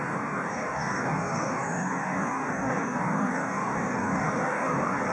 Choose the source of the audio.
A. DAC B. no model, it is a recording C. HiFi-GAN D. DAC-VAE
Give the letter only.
A